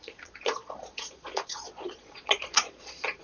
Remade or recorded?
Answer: remade